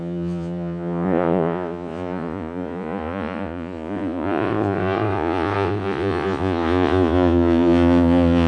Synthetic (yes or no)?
yes